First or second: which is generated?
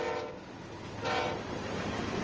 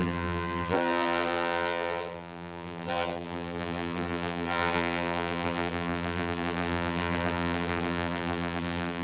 second